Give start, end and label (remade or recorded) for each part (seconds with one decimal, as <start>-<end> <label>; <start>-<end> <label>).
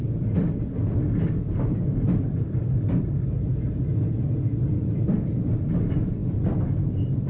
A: 0.0-3.5 remade; 3.5-4.6 recorded; 4.6-7.3 remade